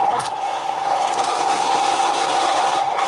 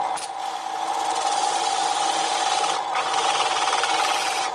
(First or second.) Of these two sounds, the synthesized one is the first